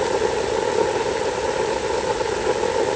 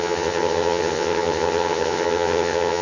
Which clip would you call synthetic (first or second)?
second